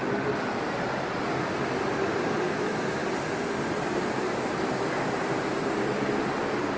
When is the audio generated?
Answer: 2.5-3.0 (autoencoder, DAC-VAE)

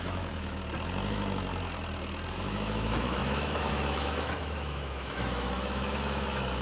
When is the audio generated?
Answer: 0.0-0.6 (autoencoder, DAC-VAE); 2.3-6.6

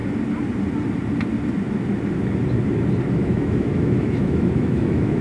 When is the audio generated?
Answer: 3.1-5.2 (autoencoder, DAC-VAE)